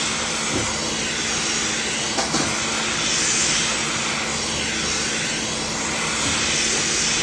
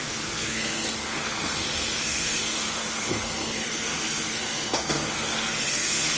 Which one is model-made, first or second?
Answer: second